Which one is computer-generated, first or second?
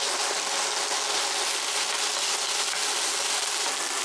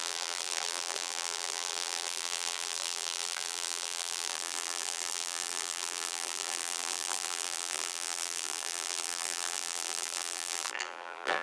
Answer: second